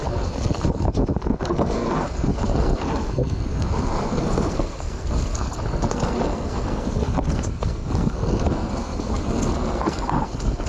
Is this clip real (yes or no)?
no